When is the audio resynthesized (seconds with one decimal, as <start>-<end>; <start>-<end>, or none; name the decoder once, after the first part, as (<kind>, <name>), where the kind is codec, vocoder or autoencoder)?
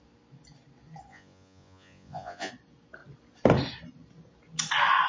1.1-2.5 (vocoder, Vocos)